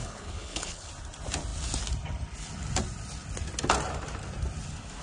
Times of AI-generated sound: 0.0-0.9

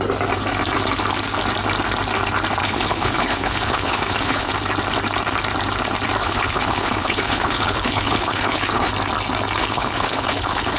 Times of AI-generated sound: 2.6-4.5; 6.2-8.9; 9.6-10.8

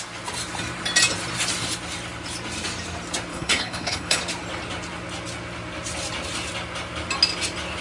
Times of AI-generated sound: 3.3-4.2

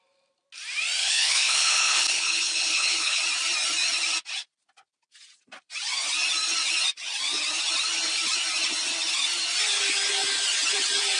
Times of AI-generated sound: 1.0-3.2

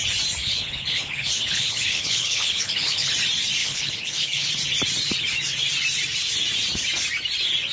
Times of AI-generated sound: 0.4-3.1; 3.6-4.5